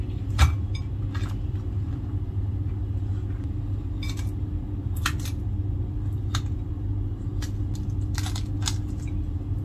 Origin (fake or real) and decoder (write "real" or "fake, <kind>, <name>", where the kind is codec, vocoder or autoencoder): real